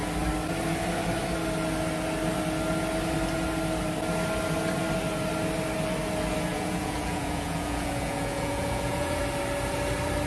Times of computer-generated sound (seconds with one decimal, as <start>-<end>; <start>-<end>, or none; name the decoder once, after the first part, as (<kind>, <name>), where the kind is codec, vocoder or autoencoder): 6.5-9.2 (vocoder, Vocos)